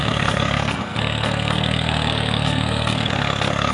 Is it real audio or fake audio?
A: fake